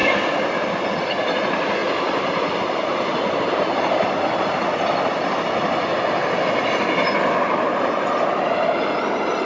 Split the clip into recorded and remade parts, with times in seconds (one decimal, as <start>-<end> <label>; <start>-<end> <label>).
0.0-9.5 recorded